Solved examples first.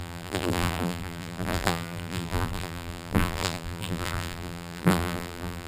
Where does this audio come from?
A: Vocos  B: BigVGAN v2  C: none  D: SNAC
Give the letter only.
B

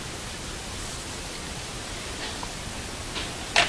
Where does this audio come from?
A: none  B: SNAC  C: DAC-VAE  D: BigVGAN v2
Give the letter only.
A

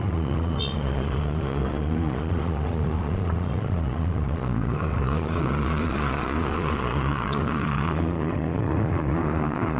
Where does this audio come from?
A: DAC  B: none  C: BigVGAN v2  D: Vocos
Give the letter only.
D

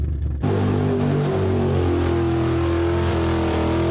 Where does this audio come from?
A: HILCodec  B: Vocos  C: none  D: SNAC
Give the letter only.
C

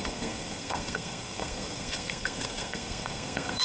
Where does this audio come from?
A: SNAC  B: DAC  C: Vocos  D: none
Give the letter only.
A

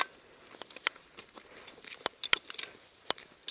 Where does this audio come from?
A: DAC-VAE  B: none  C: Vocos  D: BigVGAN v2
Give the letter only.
B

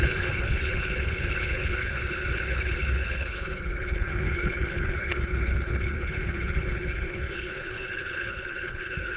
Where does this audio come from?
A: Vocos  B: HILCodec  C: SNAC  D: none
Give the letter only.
B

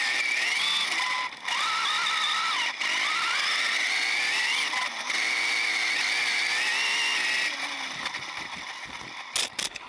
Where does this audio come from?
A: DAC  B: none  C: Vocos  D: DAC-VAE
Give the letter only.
B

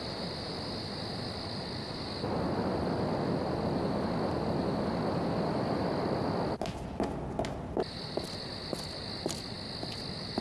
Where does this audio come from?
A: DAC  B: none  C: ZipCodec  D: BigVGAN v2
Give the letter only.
B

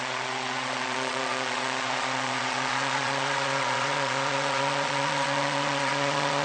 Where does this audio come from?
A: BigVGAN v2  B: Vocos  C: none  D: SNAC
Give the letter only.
B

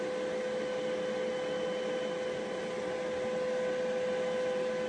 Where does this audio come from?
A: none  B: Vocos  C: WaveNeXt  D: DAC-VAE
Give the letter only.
A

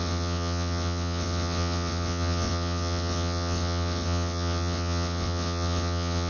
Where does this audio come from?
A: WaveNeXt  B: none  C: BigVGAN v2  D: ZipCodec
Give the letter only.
A